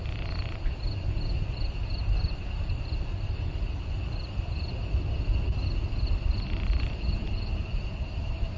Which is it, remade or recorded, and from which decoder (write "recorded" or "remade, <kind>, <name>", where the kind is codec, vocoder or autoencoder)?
recorded